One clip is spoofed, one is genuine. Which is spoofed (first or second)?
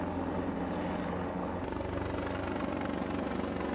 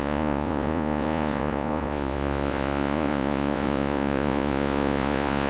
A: second